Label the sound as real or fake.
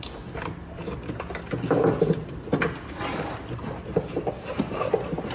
real